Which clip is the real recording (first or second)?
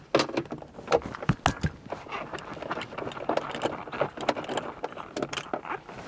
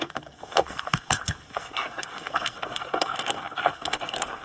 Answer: first